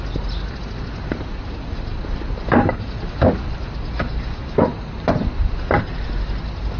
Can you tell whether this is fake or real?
real